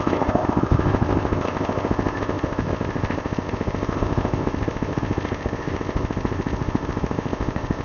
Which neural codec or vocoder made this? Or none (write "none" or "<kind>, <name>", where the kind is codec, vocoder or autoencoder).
codec, ZipCodec